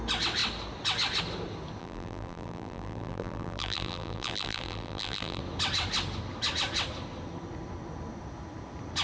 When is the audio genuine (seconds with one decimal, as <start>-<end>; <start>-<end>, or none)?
0.0-1.8; 5.4-9.0